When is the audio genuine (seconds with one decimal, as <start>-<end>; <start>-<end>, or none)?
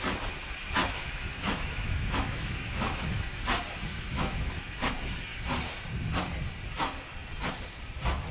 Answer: 0.0-0.8; 3.4-3.9; 4.6-8.3